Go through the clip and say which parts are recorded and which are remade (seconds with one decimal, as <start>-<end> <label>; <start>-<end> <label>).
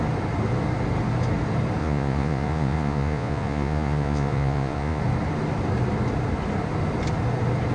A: 0.0-1.8 recorded; 1.8-5.0 remade; 5.0-7.7 recorded